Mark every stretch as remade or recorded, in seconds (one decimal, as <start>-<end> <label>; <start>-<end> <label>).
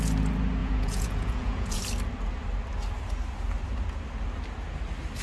0.0-0.6 recorded; 0.6-1.8 remade; 1.8-5.2 recorded